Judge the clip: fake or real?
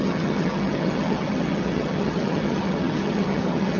fake